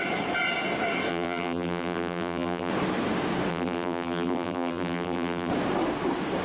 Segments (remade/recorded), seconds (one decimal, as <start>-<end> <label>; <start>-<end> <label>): 0.0-1.1 recorded; 1.1-2.7 remade; 2.7-3.5 recorded; 3.5-5.5 remade; 5.5-6.4 recorded